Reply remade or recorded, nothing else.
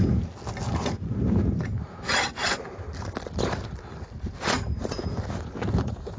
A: recorded